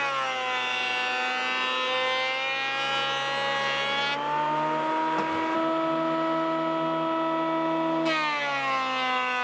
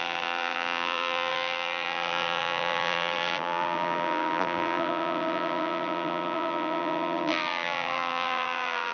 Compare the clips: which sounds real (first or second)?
first